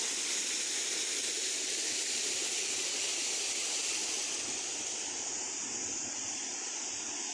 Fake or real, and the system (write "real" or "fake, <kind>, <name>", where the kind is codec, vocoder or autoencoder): real